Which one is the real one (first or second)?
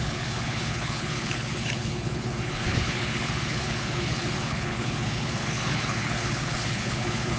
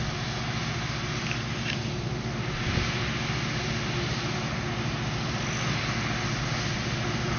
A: second